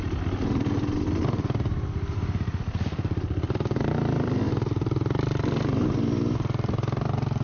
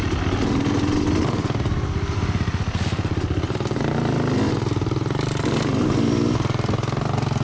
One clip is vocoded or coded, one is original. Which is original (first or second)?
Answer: second